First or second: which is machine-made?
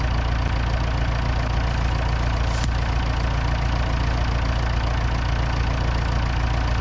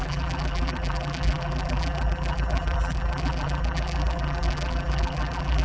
second